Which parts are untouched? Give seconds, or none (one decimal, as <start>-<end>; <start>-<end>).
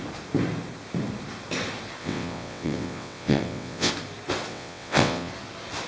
0.0-2.0; 3.9-4.5; 5.3-5.9